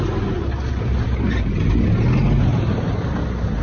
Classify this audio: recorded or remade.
recorded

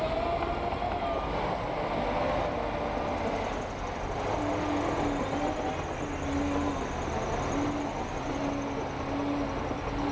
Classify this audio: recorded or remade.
recorded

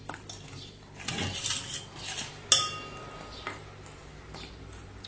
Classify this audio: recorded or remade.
recorded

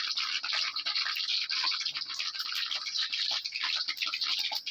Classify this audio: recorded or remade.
recorded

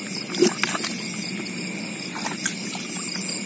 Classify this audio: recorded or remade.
recorded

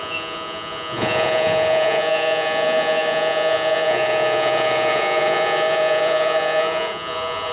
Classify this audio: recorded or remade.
remade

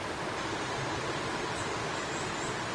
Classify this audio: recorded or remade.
recorded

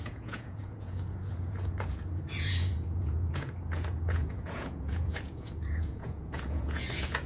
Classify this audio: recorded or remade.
remade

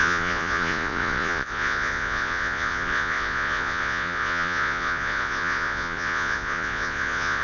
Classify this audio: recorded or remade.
remade